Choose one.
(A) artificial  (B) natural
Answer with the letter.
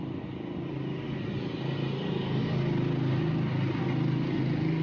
B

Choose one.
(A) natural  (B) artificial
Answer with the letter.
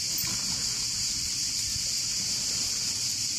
A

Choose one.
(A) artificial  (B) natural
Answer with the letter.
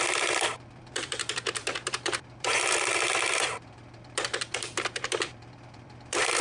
A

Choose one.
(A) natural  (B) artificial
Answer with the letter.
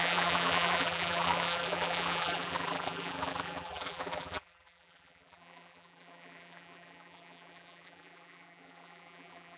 B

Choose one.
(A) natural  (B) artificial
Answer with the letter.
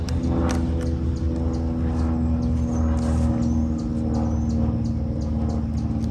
A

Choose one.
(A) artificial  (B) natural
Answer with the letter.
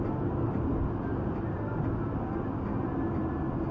B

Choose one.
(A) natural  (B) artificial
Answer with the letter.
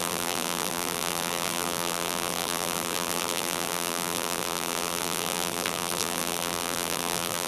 B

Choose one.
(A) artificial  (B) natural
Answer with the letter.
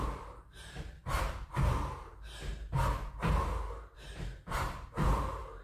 A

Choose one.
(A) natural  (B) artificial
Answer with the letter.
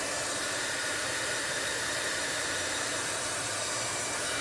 B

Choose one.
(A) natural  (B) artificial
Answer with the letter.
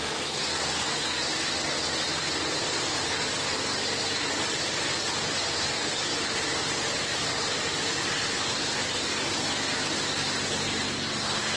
B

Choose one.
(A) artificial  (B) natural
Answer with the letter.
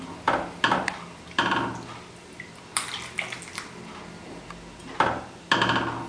B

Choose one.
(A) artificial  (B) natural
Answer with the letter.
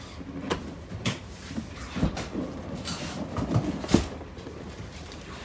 B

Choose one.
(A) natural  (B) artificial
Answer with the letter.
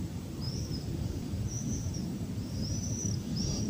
B